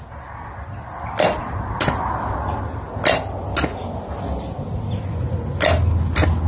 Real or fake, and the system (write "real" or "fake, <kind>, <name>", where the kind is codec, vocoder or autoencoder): real